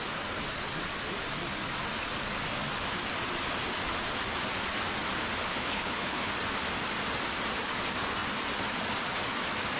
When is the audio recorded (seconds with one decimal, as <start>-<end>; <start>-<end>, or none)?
0.0-5.5; 6.3-9.8